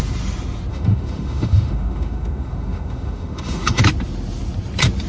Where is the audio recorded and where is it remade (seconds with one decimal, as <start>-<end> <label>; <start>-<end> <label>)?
0.0-0.7 recorded; 0.7-3.8 remade; 3.8-5.1 recorded